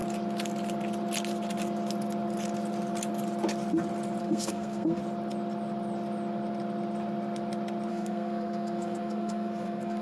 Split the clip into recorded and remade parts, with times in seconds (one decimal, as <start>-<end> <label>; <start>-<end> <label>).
0.0-4.2 recorded; 4.2-5.0 remade; 5.0-7.9 recorded; 7.9-10.0 remade